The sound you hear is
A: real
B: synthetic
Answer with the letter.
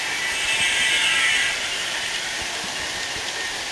A